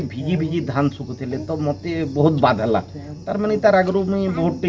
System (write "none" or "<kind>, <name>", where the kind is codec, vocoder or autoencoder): none